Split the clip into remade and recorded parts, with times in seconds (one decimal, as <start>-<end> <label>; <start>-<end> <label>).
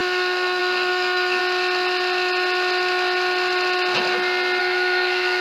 0.0-1.4 remade; 1.4-4.6 recorded; 4.6-5.4 remade